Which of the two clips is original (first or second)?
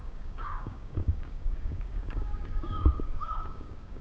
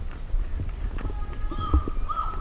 second